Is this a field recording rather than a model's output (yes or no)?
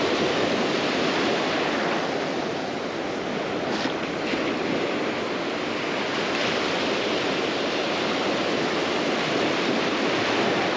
yes